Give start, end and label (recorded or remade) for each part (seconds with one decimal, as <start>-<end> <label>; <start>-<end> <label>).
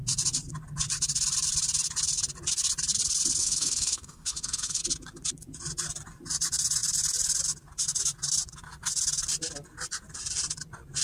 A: 0.0-3.4 recorded; 3.4-4.8 remade; 4.8-11.0 recorded